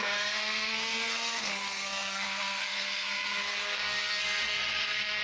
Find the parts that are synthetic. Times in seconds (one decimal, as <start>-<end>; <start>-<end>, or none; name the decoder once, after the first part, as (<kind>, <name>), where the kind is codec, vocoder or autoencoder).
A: 0.0-5.2 (codec, SNAC)